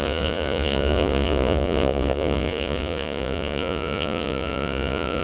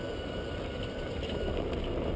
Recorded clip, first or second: second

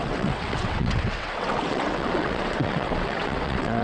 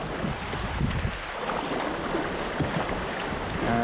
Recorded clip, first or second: second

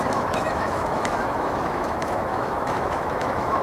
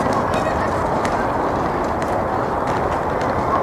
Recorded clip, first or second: second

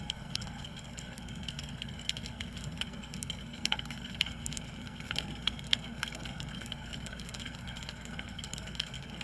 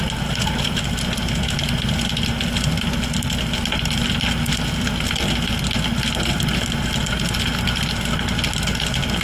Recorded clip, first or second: second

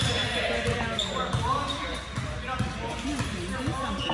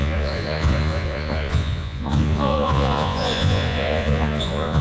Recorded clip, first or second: first